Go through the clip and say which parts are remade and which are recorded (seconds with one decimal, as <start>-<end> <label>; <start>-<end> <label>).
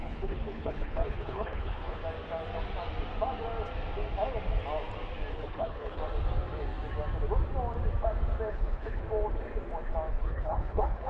0.0-2.0 remade; 2.0-5.3 recorded; 5.3-6.0 remade; 6.0-8.5 recorded; 8.5-9.0 remade; 9.0-10.1 recorded; 10.1-11.1 remade